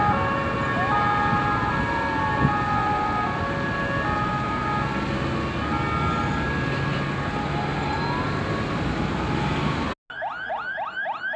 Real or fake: real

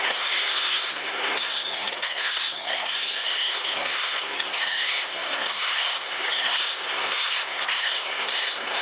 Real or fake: fake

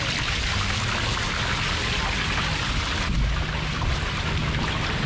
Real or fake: real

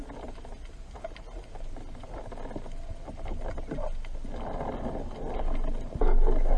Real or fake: real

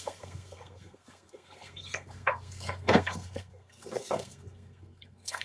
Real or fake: fake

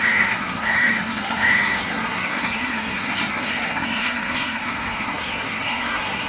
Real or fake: fake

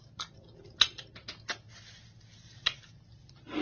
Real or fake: real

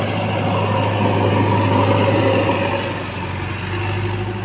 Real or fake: real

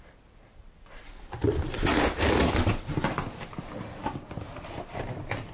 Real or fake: real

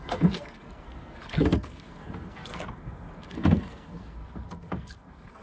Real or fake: fake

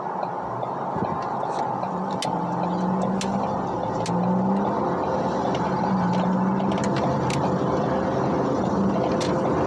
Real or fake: real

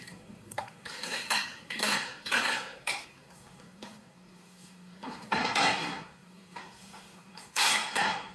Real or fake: fake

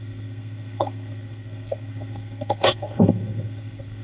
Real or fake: fake